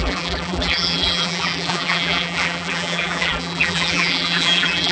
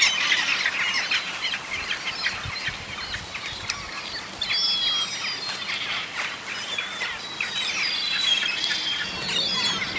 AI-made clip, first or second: first